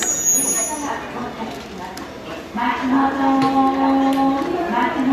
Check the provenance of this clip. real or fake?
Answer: real